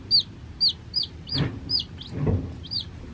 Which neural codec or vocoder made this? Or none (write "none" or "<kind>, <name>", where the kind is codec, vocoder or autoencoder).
none